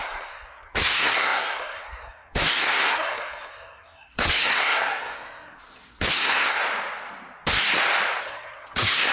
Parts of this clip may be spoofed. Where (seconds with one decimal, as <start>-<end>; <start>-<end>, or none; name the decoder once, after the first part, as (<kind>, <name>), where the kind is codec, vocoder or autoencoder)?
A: 0.0-6.6 (codec, SNAC); 8.2-9.1